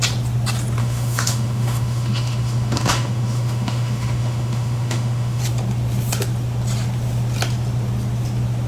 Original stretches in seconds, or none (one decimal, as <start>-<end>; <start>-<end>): 0.0-0.8; 5.4-8.7